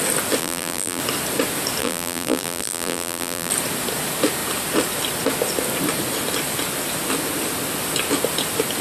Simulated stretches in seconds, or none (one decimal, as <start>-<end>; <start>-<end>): 0.4-1.0; 1.8-3.5